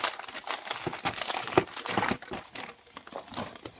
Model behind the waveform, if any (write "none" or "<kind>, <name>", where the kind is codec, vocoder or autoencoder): none